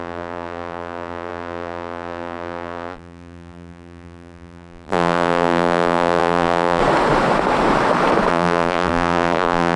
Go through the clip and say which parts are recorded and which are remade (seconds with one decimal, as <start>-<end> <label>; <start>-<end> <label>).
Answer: 0.0-6.8 remade; 6.8-8.3 recorded; 8.3-9.8 remade